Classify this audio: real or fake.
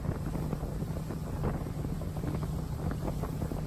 real